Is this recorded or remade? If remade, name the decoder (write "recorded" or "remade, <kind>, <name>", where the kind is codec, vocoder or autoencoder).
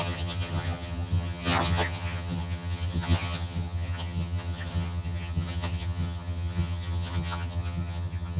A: remade, vocoder, HiFi-GAN